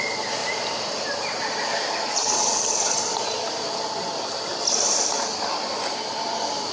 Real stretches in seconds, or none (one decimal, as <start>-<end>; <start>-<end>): 0.0-0.4; 4.2-6.7